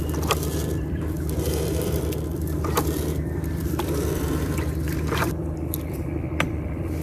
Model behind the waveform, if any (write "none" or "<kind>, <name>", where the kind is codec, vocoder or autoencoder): vocoder, BigVGAN v2